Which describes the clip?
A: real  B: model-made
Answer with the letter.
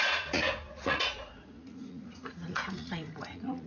B